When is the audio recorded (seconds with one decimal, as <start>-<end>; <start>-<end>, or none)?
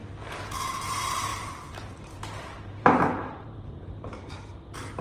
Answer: 0.0-1.3; 4.3-5.0